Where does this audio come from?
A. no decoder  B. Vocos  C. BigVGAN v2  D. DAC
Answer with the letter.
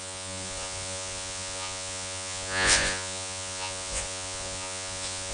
B